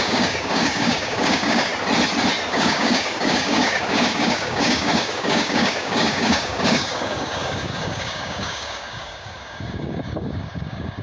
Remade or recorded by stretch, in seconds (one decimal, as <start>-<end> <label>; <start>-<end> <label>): 0.0-1.7 remade; 1.7-2.5 recorded; 2.5-11.0 remade